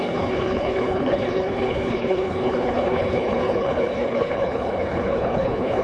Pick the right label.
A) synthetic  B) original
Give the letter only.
A